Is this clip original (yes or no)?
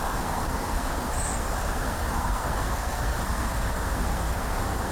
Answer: no